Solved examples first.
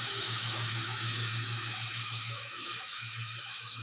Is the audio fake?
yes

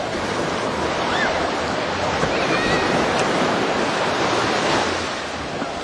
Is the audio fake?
no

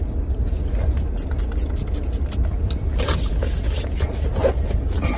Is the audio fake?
no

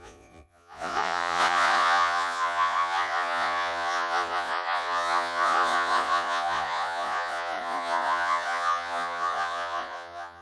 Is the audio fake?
yes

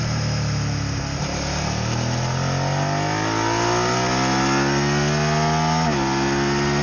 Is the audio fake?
no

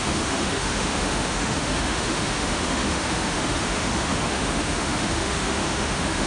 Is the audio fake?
yes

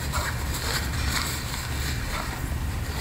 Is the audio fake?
no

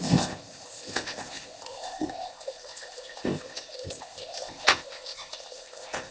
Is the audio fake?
yes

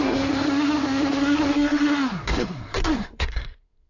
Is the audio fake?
yes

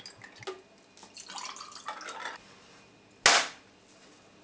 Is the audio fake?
no